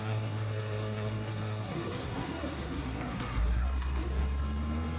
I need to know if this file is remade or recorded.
remade